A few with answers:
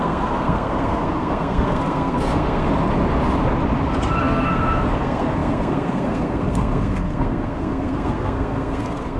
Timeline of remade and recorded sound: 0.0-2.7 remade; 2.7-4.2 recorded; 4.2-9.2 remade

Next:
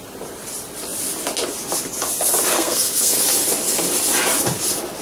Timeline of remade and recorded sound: 0.0-2.5 recorded; 2.5-3.2 remade; 3.2-5.0 recorded

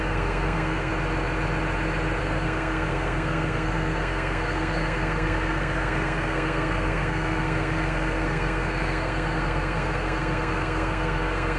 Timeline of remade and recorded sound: 0.0-0.9 remade; 0.9-2.2 recorded; 2.2-11.6 remade

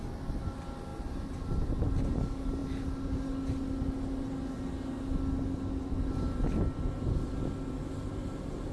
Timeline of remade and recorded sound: 0.0-8.7 recorded

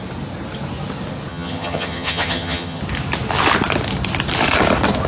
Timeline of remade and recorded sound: 0.0-1.3 recorded; 1.3-2.8 remade; 2.8-5.1 recorded

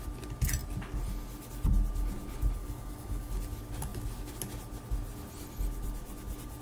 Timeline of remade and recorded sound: 0.0-2.6 recorded; 2.6-3.3 remade; 3.3-6.6 recorded

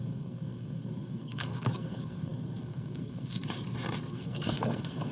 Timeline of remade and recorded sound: 0.0-3.4 remade; 3.4-4.1 recorded; 4.1-5.1 remade

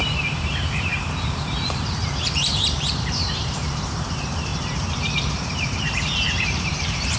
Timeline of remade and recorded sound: 0.0-4.5 remade; 4.5-5.2 recorded; 5.2-7.2 remade